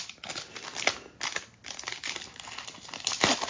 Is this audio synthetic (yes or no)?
no